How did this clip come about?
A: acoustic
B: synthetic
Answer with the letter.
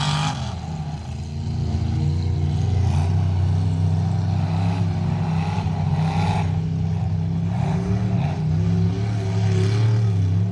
A